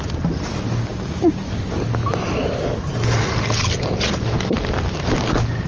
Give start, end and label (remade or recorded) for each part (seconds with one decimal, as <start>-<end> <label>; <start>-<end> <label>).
0.0-0.9 recorded; 0.9-1.4 remade; 1.4-5.7 recorded